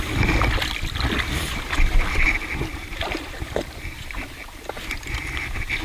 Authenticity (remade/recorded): recorded